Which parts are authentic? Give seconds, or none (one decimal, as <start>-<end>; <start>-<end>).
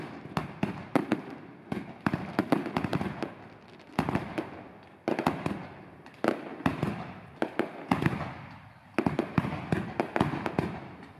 0.0-11.2